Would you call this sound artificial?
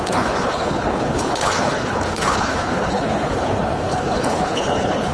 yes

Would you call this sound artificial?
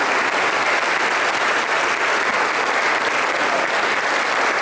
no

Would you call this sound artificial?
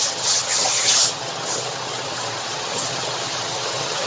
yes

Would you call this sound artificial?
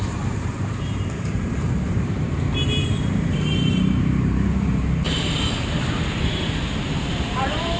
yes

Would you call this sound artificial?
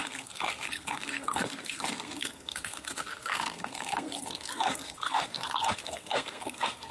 yes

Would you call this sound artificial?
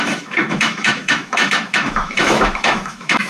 yes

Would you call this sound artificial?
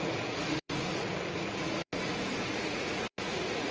yes